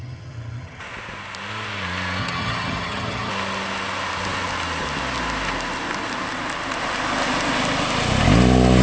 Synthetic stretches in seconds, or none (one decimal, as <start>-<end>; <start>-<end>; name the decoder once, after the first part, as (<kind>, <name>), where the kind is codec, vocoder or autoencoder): 0.0-0.8 (vocoder, HiFi-GAN); 2.2-3.3